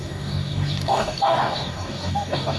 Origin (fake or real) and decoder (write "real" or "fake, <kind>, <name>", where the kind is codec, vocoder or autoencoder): fake, codec, DAC